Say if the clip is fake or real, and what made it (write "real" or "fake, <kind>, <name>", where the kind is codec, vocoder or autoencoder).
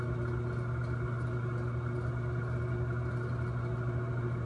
real